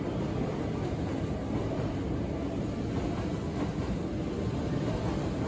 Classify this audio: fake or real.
real